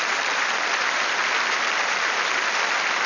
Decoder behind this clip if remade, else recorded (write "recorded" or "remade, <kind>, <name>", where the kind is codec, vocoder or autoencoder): recorded